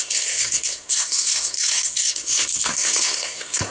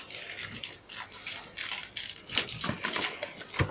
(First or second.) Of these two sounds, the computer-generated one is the first